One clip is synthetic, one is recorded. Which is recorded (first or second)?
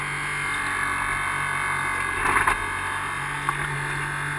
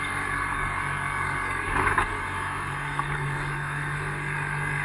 first